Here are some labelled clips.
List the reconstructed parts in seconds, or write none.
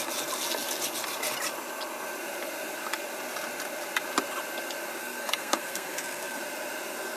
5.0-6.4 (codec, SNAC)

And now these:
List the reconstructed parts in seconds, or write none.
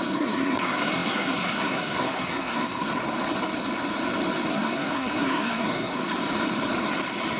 0.0-2.9 (codec, SNAC); 4.5-6.1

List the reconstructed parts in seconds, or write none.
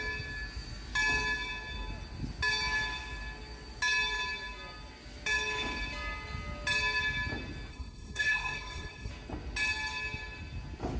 7.7-9.1 (codec, SNAC)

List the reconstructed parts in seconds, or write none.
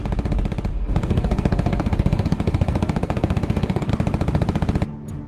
0.7-3.9 (codec, SNAC)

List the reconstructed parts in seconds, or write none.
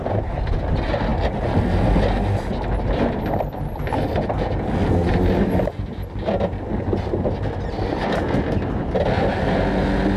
none